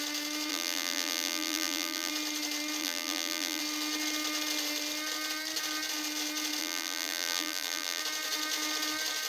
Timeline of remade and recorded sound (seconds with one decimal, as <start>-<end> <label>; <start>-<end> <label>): 0.0-0.5 recorded; 0.5-2.1 remade; 2.1-2.8 recorded; 2.8-3.6 remade; 3.6-6.6 recorded; 6.6-8.0 remade; 8.0-9.3 recorded